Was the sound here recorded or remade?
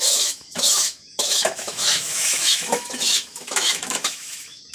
remade